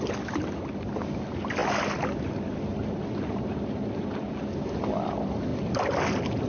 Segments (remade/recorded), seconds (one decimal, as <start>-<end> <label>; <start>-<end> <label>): 0.0-6.5 recorded